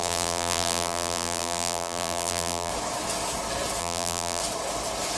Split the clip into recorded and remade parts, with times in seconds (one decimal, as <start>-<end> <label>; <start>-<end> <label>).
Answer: 0.0-2.7 remade; 2.7-3.8 recorded; 3.8-4.4 remade; 4.4-5.2 recorded